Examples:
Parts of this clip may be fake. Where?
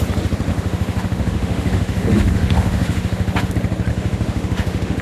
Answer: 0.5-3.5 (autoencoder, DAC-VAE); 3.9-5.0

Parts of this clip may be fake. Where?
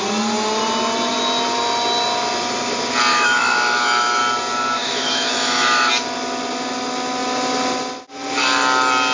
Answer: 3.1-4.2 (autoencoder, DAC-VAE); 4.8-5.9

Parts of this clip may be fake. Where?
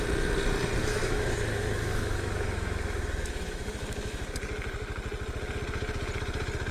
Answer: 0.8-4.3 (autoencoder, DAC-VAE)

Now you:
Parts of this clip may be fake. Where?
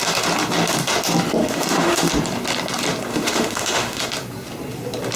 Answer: 1.4-2.1 (autoencoder, DAC-VAE); 3.1-4.0